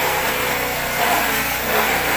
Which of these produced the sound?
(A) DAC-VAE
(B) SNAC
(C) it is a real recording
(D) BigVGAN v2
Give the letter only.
B